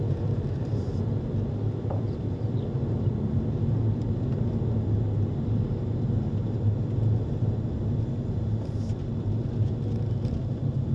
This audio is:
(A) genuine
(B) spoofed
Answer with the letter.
A